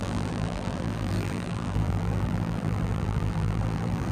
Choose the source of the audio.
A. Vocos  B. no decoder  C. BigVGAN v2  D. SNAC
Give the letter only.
C